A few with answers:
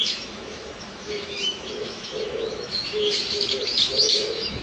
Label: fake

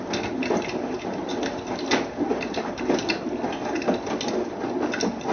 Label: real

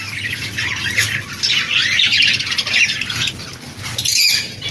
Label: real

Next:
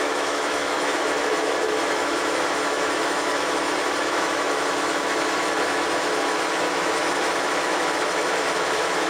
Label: fake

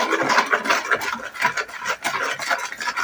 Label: real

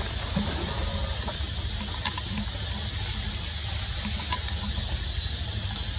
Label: real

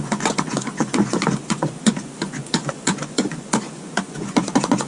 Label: fake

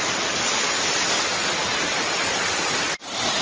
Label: real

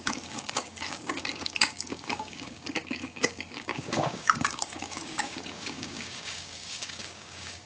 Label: fake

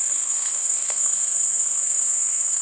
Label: fake